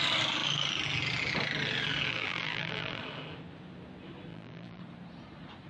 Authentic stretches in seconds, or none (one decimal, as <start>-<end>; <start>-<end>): 0.0-2.1; 3.0-4.3; 4.8-5.7

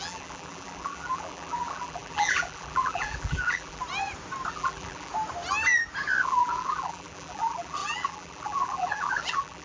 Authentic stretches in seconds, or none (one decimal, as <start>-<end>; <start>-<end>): 3.8-4.5; 5.1-6.2